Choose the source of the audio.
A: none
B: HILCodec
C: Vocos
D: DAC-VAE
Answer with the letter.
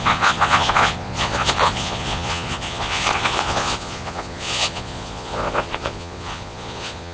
C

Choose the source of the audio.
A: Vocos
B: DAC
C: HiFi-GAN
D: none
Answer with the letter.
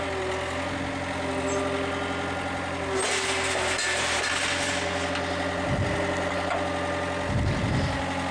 D